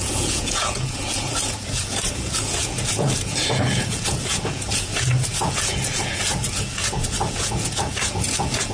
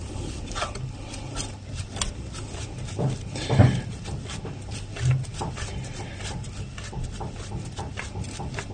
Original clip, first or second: second